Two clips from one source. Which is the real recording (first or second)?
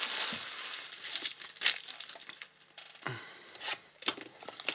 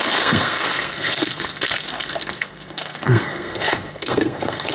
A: first